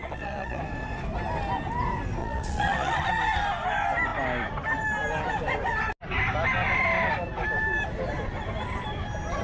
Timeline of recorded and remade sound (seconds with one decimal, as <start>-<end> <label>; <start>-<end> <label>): 0.0-0.6 remade; 0.6-2.2 recorded; 2.2-3.1 remade; 3.1-9.4 recorded